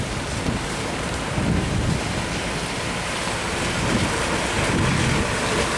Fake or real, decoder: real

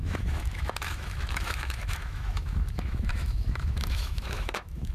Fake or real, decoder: fake, autoencoder, DAC-VAE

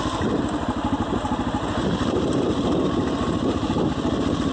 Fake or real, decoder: fake, vocoder, BigVGAN v2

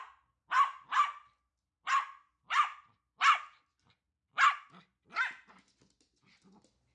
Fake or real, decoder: real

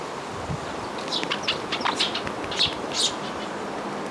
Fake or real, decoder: real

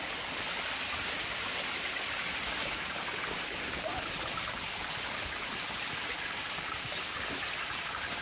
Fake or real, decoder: real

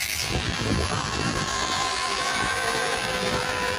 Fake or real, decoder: fake, vocoder, BigVGAN v2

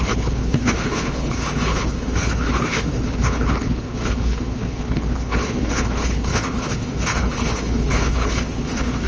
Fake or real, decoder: fake, codec, HILCodec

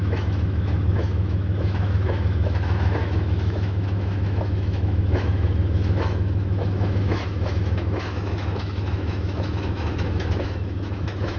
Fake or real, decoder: fake, autoencoder, DAC-VAE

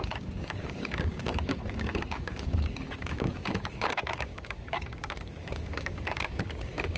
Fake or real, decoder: fake, codec, DAC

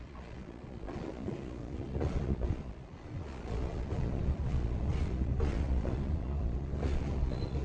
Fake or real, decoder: fake, vocoder, Vocos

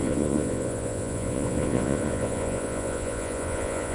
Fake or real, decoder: fake, vocoder, Vocos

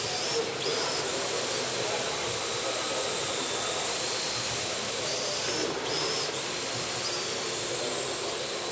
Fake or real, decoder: real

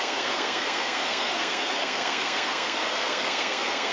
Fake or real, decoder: fake, codec, SNAC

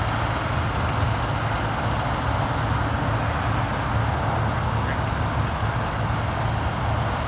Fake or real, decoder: real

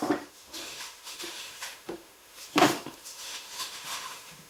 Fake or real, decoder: fake, autoencoder, DAC-VAE